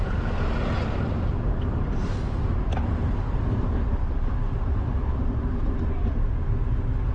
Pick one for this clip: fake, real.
real